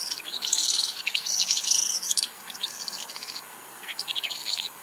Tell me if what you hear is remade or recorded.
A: remade